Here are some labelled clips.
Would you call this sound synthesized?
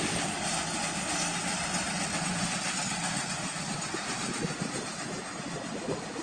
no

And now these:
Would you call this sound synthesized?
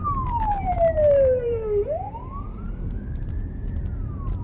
yes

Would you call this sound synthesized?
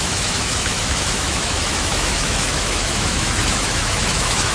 yes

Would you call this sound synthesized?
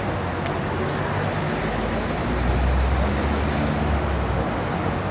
no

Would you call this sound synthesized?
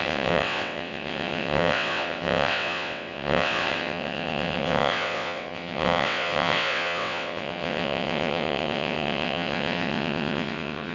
yes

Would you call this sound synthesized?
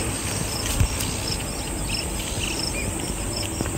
no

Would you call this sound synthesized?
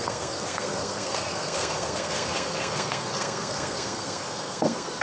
yes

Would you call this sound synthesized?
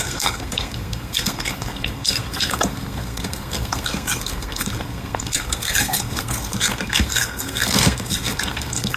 yes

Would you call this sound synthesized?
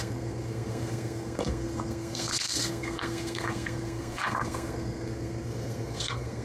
yes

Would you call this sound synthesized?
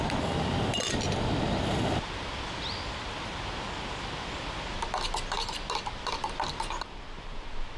no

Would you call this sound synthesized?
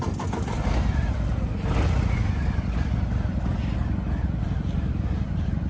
no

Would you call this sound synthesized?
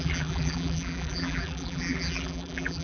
yes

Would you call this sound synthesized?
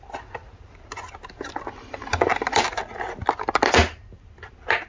no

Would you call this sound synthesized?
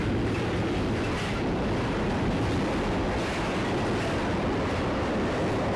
no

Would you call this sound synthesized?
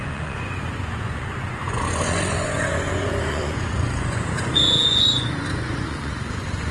yes